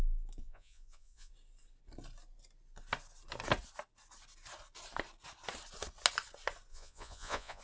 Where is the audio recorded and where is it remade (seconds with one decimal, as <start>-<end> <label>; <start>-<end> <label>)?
0.0-0.4 recorded; 0.4-1.3 remade; 1.3-6.7 recorded; 6.7-7.6 remade

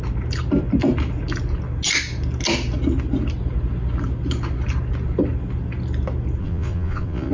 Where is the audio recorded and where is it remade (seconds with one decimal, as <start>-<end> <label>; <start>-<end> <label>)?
0.0-6.4 recorded; 6.4-7.3 remade

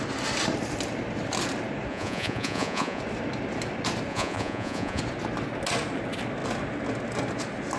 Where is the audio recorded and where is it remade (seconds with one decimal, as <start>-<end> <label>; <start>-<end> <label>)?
0.0-1.9 recorded; 1.9-3.0 remade; 3.0-4.1 recorded; 4.1-5.0 remade; 5.0-7.8 recorded

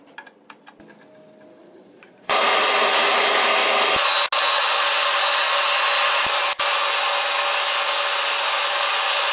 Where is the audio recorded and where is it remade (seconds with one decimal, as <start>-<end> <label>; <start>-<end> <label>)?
0.0-1.6 recorded; 1.6-2.4 remade; 2.4-9.3 recorded